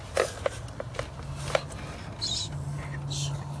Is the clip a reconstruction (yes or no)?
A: no